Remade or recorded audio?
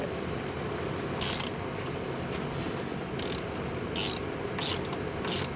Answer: recorded